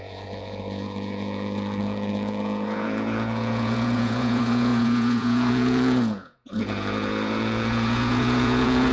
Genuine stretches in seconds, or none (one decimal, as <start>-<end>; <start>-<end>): none